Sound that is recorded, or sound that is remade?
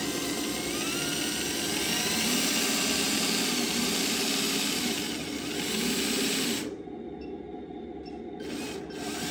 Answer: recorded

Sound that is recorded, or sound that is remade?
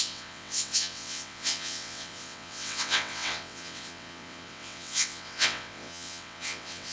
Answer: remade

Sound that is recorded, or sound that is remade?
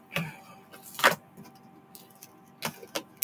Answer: recorded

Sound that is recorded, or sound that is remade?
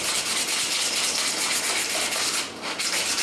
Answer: recorded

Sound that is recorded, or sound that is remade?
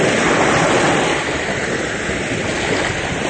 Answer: recorded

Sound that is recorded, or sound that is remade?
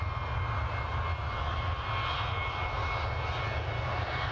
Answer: recorded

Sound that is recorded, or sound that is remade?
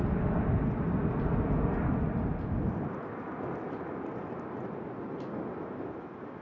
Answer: recorded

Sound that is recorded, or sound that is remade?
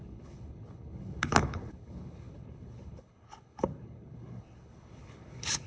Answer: remade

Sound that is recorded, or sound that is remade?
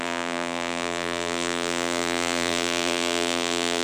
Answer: remade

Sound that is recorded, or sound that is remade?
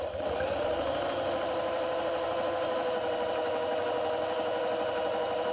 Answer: recorded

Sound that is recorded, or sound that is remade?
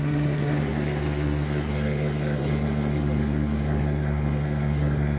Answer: remade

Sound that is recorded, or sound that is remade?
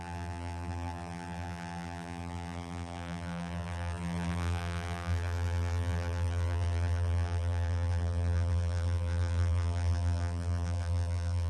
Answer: remade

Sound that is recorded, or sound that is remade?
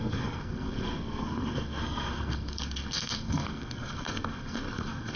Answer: remade